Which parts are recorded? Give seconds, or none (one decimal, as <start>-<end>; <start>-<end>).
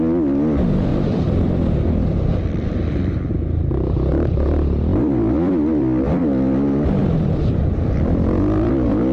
0.0-0.9; 3.3-4.9; 6.2-7.0; 8.7-9.1